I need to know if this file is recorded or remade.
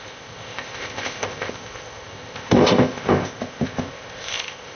remade